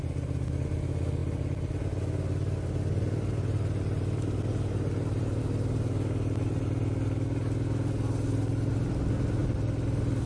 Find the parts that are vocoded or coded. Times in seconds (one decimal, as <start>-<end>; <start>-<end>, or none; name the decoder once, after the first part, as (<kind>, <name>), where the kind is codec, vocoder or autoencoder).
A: none